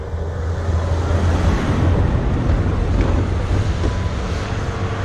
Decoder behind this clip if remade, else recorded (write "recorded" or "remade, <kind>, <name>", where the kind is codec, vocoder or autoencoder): recorded